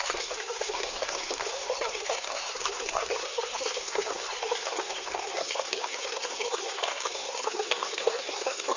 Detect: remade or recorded remade